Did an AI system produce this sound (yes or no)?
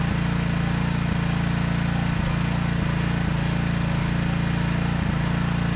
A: no